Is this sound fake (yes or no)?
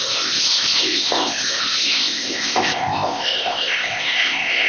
yes